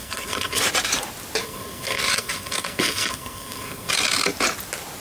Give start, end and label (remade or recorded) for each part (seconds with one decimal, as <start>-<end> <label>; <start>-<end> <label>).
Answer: 0.0-0.6 remade; 0.6-1.4 recorded; 1.4-3.9 remade; 3.9-5.0 recorded